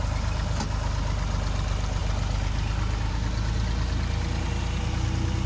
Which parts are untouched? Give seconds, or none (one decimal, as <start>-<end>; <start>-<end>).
0.0-5.5